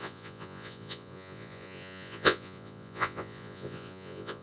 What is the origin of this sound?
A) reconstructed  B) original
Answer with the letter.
A